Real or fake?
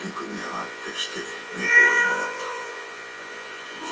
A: fake